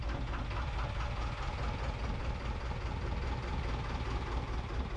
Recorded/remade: recorded